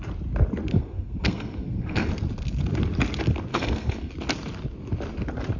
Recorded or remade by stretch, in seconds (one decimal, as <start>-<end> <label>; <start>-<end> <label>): 0.0-0.7 recorded; 0.7-2.1 remade; 2.1-3.5 recorded; 3.5-4.1 remade; 4.1-5.6 recorded